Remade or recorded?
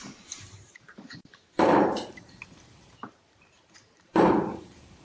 remade